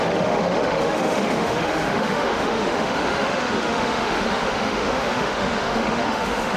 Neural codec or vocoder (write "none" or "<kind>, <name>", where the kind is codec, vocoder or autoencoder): autoencoder, DAC-VAE